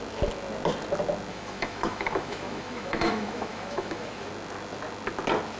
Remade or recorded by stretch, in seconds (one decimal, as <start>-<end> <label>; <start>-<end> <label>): 0.0-1.3 recorded; 1.3-4.3 remade; 4.3-5.6 recorded